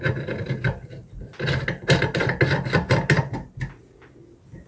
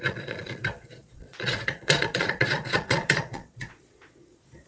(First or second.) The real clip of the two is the first